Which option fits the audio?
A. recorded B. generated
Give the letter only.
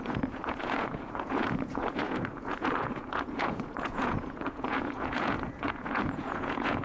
B